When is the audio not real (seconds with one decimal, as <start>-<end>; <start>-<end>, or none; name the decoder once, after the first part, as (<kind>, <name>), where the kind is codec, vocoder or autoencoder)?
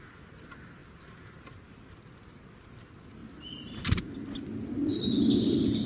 0.8-1.8 (vocoder, BigVGAN v2); 3.2-4.0